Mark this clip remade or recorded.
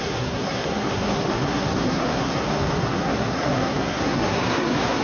remade